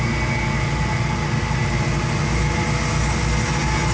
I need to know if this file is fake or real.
real